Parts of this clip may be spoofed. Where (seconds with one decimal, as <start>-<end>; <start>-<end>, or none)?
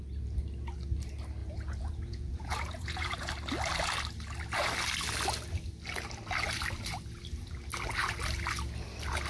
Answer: 1.4-3.3